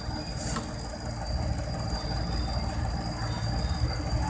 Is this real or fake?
real